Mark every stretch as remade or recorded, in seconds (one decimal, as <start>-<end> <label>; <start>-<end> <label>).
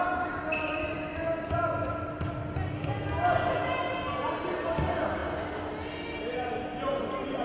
0.0-7.4 recorded